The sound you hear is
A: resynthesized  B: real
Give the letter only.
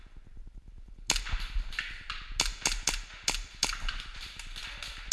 B